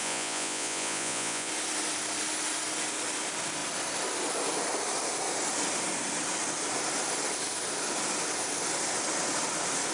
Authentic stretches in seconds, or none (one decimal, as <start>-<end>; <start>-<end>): 1.5-9.9